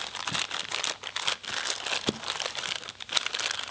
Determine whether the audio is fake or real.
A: real